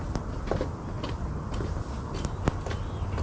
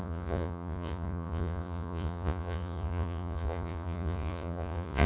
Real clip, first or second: first